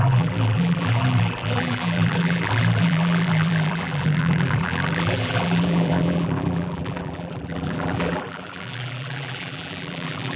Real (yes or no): no